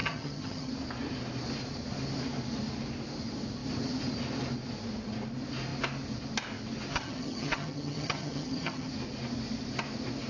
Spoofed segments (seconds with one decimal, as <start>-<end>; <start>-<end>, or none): 0.0-0.7; 6.9-8.9